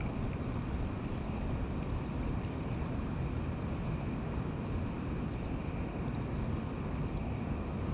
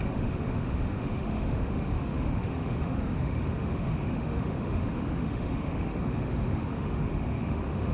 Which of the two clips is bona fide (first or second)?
first